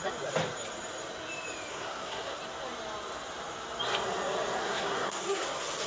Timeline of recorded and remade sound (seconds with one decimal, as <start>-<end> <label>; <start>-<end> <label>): 0.0-1.7 recorded; 1.7-2.4 remade; 2.4-4.6 recorded; 4.6-5.5 remade; 5.5-5.9 recorded